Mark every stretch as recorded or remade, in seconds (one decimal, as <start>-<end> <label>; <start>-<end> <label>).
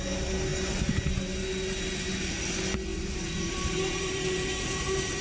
0.0-2.9 recorded; 2.9-5.2 remade